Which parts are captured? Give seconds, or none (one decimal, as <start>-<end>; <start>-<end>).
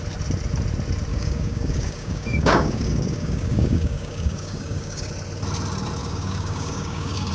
0.0-1.1; 5.1-6.0